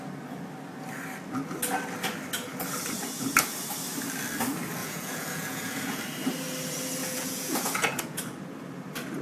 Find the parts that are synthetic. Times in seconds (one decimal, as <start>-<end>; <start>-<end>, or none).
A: 4.8-6.0; 7.0-8.2